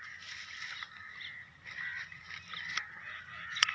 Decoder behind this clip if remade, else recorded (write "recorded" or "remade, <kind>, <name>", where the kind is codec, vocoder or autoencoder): recorded